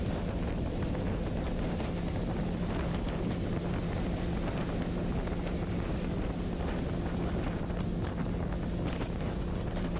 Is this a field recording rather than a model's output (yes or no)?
yes